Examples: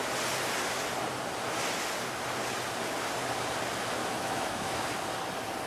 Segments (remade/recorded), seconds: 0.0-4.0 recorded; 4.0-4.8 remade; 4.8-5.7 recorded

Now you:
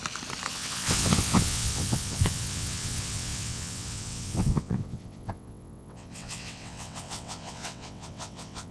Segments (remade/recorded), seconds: 0.0-0.5 recorded; 0.5-8.7 remade

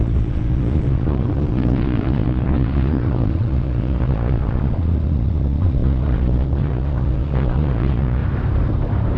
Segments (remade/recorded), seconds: 0.0-8.2 remade; 8.2-9.2 recorded

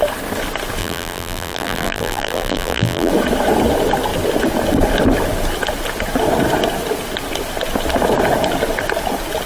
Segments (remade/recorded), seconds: 0.0-0.8 recorded; 0.8-3.1 remade; 3.1-9.5 recorded

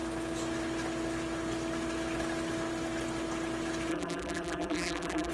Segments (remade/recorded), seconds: 0.0-3.9 recorded; 3.9-5.3 remade

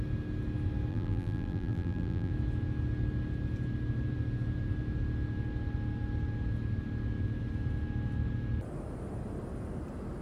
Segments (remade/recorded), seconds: 0.0-0.9 recorded; 0.9-2.3 remade; 2.3-10.2 recorded

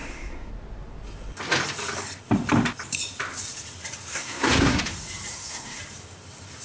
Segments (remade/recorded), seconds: 0.0-0.5 remade; 0.5-4.1 recorded; 4.1-4.8 remade; 4.8-5.3 recorded; 5.3-5.8 remade; 5.8-6.6 recorded